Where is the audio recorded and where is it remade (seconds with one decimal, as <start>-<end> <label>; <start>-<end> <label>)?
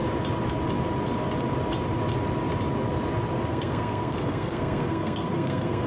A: 0.0-3.5 recorded; 3.5-5.9 remade